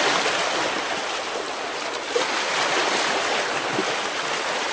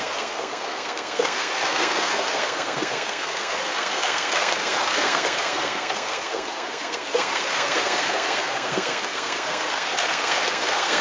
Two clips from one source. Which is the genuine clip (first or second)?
first